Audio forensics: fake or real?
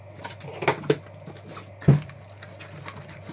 real